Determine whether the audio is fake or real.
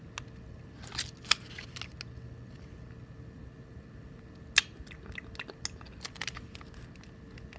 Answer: real